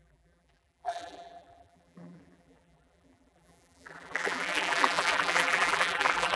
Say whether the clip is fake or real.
fake